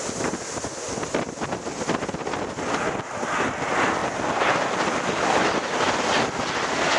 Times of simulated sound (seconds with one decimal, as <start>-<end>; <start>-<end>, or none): none